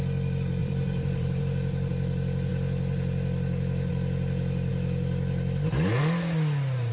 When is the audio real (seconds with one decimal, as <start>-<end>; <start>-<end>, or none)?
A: 0.0-0.6; 1.4-6.9